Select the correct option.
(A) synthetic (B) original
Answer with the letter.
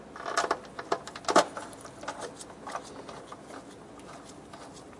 B